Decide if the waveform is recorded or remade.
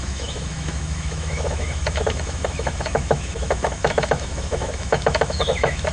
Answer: remade